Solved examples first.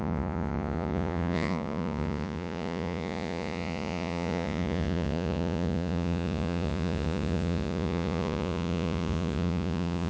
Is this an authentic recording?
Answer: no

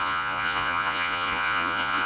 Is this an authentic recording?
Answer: no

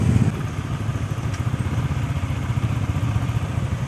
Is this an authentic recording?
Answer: yes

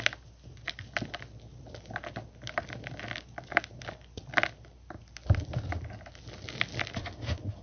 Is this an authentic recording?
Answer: yes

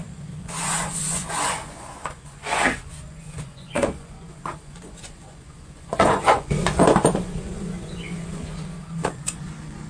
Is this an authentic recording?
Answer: no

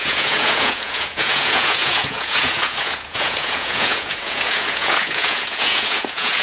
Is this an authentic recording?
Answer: no